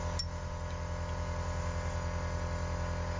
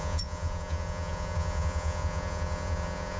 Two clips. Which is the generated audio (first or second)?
second